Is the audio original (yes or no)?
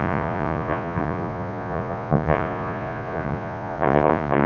no